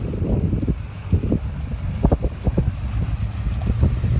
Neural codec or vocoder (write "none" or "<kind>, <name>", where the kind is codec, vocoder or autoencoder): none